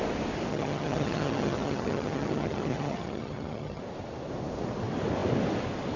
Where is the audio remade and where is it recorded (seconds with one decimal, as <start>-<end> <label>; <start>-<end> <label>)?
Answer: 0.0-0.5 recorded; 0.5-3.8 remade; 3.8-6.0 recorded